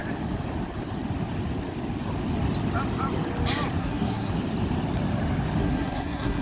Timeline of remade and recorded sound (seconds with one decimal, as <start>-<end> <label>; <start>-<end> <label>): 0.0-3.8 recorded; 3.8-4.3 remade; 4.3-5.6 recorded; 5.6-6.4 remade